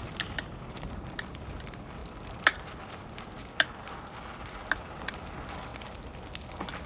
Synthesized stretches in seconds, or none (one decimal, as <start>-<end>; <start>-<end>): none